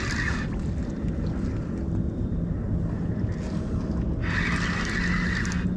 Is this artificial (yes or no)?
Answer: no